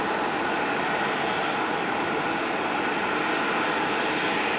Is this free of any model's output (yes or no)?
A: yes